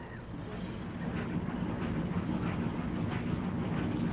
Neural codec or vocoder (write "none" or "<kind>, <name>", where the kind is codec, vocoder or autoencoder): none